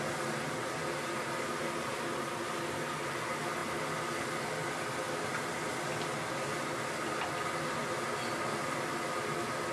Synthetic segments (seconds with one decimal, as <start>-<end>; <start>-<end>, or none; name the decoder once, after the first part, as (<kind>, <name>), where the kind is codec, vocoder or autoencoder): none